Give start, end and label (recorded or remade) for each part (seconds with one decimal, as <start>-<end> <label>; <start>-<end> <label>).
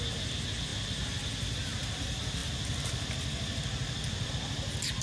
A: 0.0-2.4 recorded; 2.4-4.3 remade; 4.3-5.0 recorded